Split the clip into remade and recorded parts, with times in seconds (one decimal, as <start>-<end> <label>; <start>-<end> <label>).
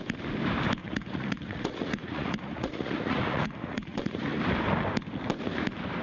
0.0-0.8 recorded; 0.8-4.4 remade; 4.4-6.0 recorded